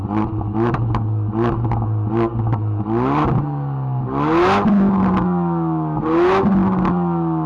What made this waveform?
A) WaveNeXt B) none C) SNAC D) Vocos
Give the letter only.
B